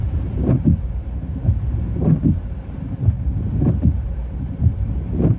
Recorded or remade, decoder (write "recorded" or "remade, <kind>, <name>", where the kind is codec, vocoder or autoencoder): remade, vocoder, BigVGAN v2